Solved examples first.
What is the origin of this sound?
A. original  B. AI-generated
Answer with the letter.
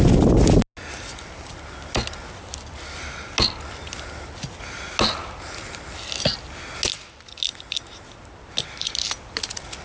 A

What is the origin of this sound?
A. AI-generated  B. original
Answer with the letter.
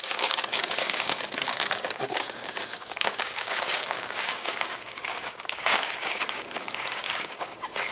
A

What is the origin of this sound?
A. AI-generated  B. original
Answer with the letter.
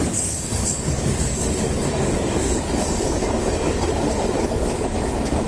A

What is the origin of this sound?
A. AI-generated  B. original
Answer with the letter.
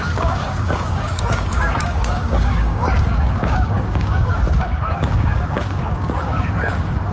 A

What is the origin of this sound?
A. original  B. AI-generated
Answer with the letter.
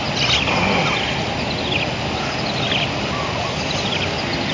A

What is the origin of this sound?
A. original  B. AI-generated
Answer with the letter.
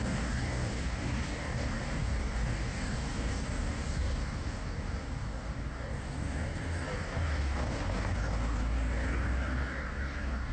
B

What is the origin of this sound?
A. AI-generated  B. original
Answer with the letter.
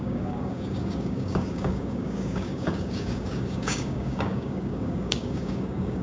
A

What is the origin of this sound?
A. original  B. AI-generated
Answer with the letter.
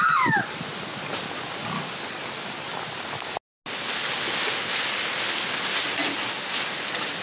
A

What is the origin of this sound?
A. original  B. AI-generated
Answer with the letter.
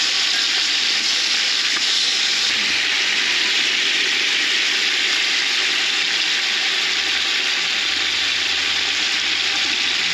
A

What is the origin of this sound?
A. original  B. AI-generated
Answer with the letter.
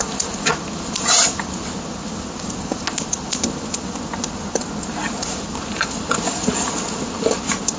A